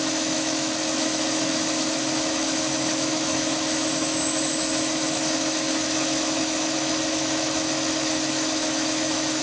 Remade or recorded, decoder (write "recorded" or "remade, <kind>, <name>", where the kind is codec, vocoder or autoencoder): remade, autoencoder, DAC-VAE